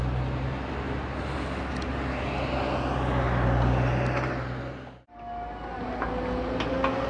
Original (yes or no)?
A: yes